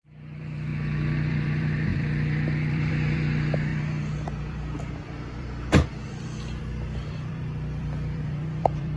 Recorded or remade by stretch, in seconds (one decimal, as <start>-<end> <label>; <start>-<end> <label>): 0.0-0.7 remade; 0.7-1.3 recorded; 1.3-9.0 remade